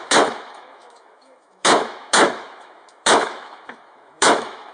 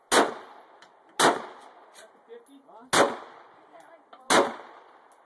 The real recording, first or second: second